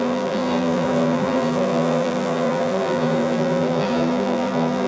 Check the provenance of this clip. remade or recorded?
remade